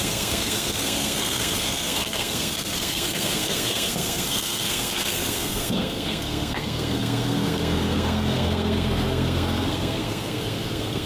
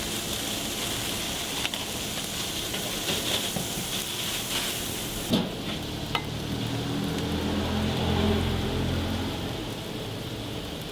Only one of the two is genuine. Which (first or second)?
second